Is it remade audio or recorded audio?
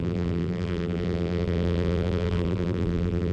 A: remade